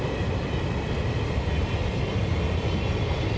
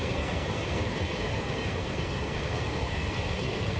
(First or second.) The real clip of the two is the first